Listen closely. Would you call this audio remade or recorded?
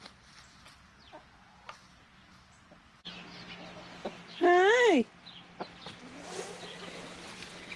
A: recorded